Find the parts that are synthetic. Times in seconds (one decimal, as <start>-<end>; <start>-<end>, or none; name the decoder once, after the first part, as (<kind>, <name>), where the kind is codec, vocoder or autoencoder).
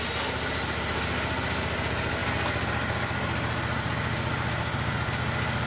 none